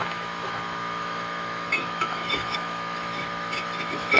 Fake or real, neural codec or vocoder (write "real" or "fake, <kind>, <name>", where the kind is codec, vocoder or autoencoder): fake, autoencoder, DAC-VAE